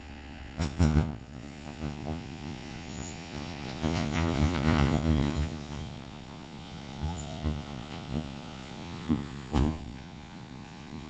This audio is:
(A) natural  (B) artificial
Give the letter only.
B